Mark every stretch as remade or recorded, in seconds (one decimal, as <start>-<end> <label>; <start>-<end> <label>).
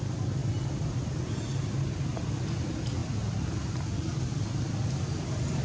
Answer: 0.0-5.6 recorded